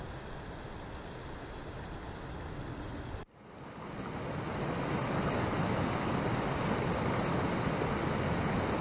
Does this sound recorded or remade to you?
recorded